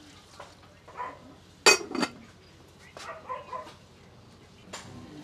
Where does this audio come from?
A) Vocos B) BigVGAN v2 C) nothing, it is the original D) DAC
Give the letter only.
C